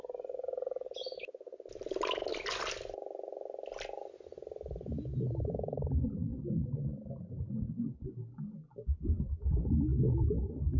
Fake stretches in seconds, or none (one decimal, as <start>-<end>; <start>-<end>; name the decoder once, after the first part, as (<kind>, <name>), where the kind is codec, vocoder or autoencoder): none